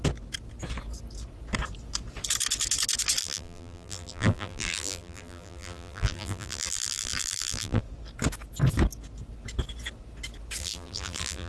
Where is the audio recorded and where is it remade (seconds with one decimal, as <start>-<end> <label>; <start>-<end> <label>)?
0.0-3.2 recorded; 3.2-7.8 remade; 7.8-10.6 recorded; 10.6-11.5 remade